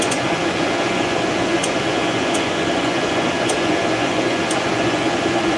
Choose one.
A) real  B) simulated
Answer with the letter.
B